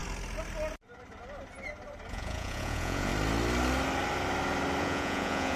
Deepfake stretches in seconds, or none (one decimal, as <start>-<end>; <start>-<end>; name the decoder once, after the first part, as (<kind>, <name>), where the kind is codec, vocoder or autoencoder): 2.1-3.1 (vocoder, Vocos); 4.8-5.6